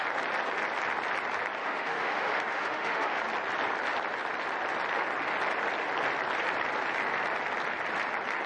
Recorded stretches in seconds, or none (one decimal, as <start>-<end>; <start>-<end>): 0.0-1.6; 3.2-8.5